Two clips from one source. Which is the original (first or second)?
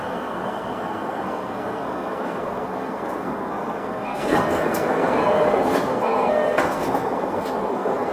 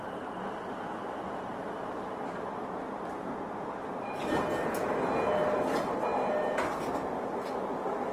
second